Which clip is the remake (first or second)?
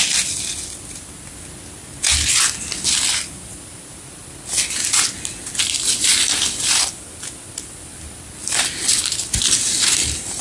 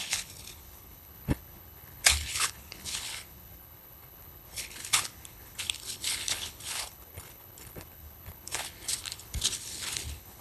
second